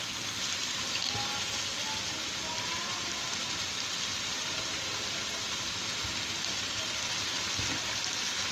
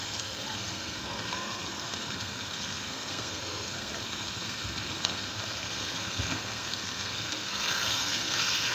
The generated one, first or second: second